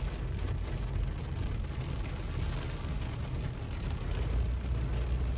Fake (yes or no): no